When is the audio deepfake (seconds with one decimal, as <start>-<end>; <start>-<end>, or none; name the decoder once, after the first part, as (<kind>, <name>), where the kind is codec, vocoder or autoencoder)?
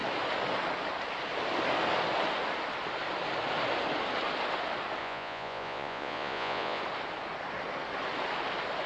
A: 5.0-6.8 (vocoder, Vocos)